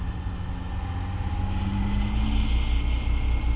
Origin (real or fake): real